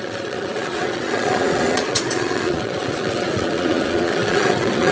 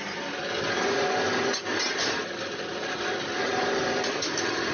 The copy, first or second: first